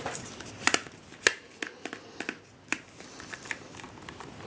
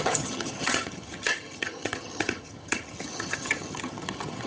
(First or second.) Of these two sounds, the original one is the first